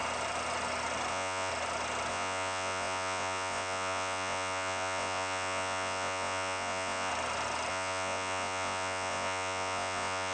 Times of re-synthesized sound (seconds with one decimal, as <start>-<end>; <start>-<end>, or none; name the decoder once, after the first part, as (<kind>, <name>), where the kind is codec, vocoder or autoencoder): 1.1-1.5 (vocoder, Vocos); 2.1-7.1; 7.7-10.3